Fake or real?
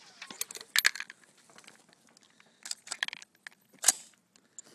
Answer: real